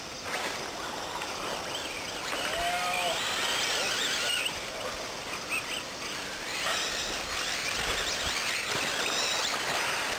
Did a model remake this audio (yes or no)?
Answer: no